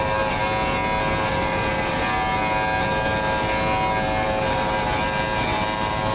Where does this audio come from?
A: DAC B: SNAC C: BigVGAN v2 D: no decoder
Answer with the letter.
D